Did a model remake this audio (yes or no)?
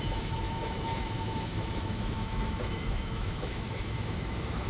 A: yes